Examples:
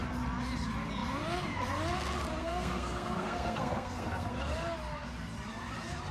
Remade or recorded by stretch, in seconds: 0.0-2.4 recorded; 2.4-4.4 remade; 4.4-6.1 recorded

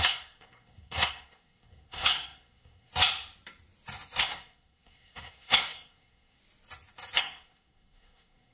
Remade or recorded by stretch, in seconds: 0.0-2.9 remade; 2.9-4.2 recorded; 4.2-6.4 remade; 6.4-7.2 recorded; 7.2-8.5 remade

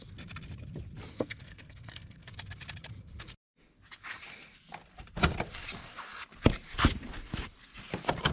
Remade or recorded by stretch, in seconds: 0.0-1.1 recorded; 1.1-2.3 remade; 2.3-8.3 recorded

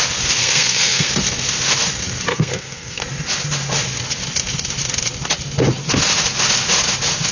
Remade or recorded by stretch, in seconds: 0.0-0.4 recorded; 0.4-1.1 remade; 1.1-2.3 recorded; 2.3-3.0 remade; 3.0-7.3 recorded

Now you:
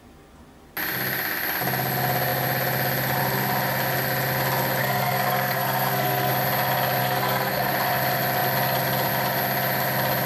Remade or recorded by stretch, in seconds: 0.0-4.8 recorded; 4.8-6.3 remade; 6.3-7.0 recorded; 7.0-7.7 remade; 7.7-10.3 recorded

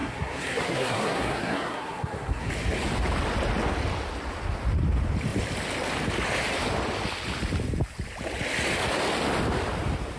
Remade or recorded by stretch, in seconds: 0.0-2.5 remade; 2.5-10.2 recorded